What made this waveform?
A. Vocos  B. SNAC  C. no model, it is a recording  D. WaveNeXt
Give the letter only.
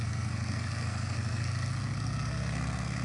B